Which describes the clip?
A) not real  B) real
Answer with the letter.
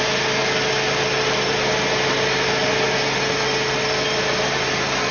B